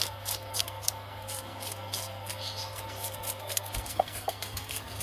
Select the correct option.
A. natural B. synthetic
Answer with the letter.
B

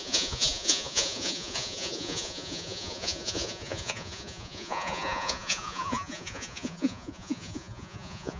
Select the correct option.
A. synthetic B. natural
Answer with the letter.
A